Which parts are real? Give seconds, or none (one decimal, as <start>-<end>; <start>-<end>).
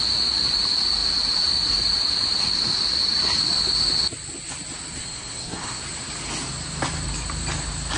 0.0-5.0; 5.8-8.0